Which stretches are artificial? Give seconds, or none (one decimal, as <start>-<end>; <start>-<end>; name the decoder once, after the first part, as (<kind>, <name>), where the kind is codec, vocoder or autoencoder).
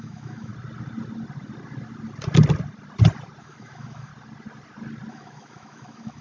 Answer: 0.0-0.5 (autoencoder, DAC-VAE); 3.4-4.1; 5.1-6.2